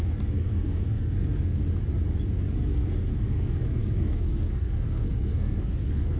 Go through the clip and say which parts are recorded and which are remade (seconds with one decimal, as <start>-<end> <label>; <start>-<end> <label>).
0.0-1.6 remade; 1.6-2.4 recorded; 2.4-6.2 remade

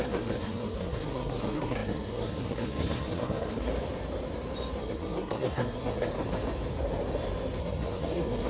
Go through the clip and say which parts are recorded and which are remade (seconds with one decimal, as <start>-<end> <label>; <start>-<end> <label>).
0.0-3.7 remade; 3.7-4.8 recorded; 4.8-6.1 remade; 6.1-7.6 recorded; 7.6-8.5 remade

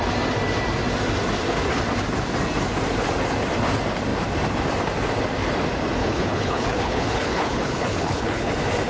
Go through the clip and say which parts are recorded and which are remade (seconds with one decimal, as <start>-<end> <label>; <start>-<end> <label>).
0.0-6.0 recorded; 6.0-8.5 remade; 8.5-8.9 recorded

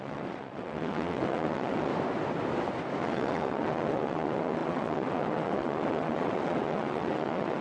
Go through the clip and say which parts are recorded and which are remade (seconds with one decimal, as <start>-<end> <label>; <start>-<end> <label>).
0.0-1.9 remade; 1.9-3.0 recorded; 3.0-7.6 remade

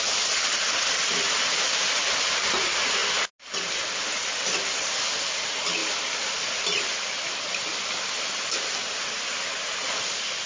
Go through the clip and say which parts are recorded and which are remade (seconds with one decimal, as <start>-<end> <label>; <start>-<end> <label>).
0.0-10.5 recorded

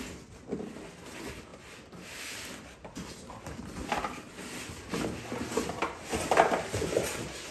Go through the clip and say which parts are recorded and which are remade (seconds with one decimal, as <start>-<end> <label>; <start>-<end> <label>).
0.0-7.5 recorded

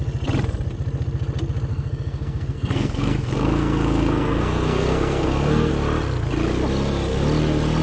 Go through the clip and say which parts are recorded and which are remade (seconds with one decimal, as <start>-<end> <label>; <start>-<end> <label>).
0.0-1.7 recorded; 1.7-5.7 remade; 5.7-7.8 recorded